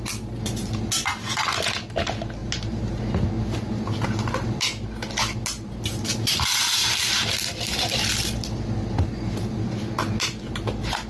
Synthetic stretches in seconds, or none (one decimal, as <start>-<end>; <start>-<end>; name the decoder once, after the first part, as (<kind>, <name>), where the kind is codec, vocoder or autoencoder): 2.4-3.0 (vocoder, BigVGAN v2); 6.1-7.0